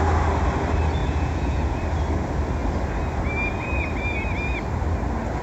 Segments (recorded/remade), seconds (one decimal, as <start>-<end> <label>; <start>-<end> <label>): 0.0-1.0 recorded; 1.0-1.8 remade; 1.8-5.4 recorded